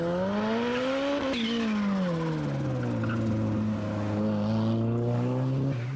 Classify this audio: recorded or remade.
recorded